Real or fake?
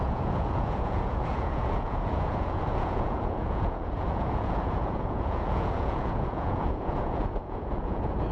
fake